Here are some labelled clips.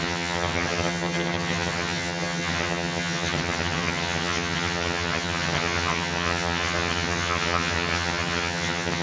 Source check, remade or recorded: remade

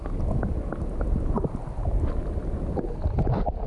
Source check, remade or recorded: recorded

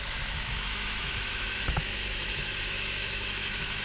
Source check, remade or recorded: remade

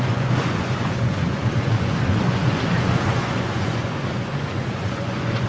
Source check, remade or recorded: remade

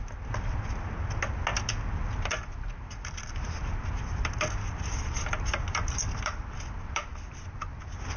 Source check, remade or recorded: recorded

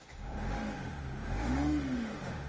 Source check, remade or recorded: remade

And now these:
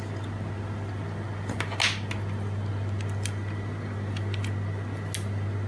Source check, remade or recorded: recorded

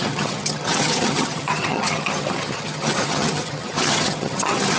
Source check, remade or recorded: remade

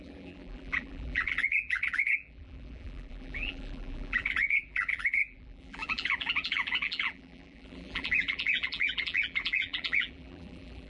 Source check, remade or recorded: remade